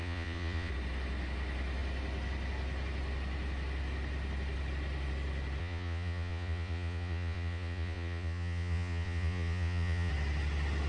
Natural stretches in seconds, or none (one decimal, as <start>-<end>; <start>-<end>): 0.7-5.6; 10.1-10.9

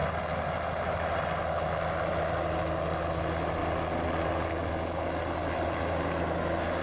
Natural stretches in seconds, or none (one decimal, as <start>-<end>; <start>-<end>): 0.0-6.8